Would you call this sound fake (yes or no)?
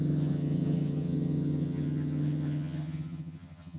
yes